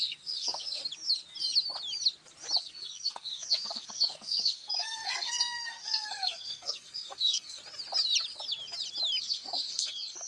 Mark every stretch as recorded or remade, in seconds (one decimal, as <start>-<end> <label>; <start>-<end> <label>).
0.0-0.8 remade; 0.8-2.6 recorded; 2.6-7.6 remade; 7.6-9.2 recorded; 9.2-10.3 remade